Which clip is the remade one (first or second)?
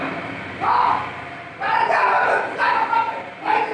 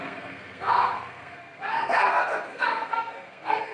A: second